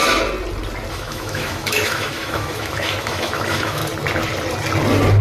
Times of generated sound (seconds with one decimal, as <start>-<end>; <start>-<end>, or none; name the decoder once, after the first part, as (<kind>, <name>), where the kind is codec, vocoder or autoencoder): 0.9-3.8 (autoencoder, DAC-VAE)